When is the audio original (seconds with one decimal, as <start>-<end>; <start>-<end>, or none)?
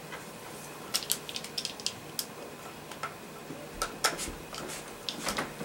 0.0-5.6